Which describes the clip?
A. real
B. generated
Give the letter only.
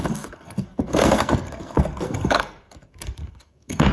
B